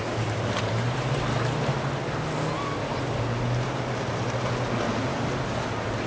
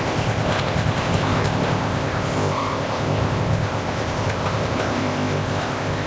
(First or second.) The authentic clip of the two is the first